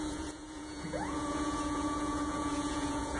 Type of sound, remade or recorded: remade